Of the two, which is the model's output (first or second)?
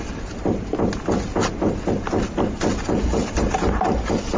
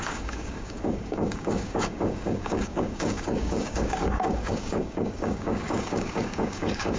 second